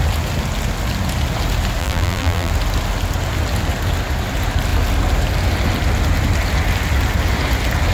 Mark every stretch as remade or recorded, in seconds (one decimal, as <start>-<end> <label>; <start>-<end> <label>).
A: 0.0-1.8 recorded; 1.8-2.5 remade; 2.5-7.9 recorded